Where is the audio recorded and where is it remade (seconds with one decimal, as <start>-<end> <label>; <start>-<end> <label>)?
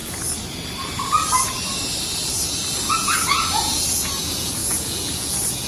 0.0-2.8 recorded; 2.8-5.7 remade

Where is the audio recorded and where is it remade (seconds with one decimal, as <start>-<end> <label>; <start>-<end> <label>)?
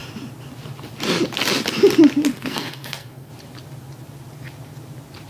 0.0-2.3 recorded; 2.3-3.3 remade; 3.3-5.3 recorded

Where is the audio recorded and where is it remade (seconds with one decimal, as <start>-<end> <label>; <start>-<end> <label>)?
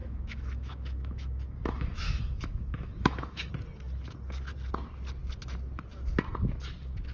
0.0-3.5 remade; 3.5-7.1 recorded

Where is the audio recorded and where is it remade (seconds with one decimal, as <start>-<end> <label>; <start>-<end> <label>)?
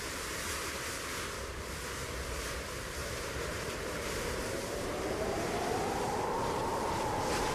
0.0-3.0 recorded; 3.0-7.1 remade; 7.1-7.5 recorded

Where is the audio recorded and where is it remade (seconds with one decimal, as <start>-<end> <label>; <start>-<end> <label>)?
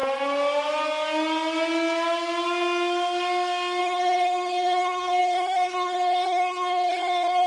0.0-3.8 recorded; 3.8-7.5 remade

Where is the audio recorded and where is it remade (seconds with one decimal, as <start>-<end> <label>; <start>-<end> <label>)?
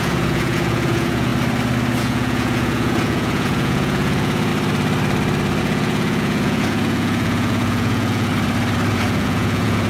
0.0-1.3 remade; 1.3-2.0 recorded; 2.0-4.5 remade; 4.5-5.6 recorded; 5.6-8.3 remade; 8.3-8.9 recorded; 8.9-9.9 remade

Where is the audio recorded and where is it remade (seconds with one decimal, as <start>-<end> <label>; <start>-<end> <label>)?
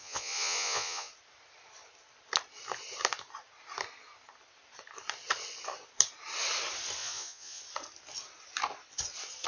0.0-1.1 remade; 1.1-7.0 recorded; 7.0-7.6 remade; 7.6-9.5 recorded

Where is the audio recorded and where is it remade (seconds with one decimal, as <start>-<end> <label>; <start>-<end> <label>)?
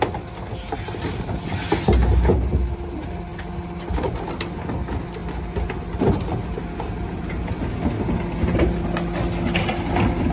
0.0-10.3 recorded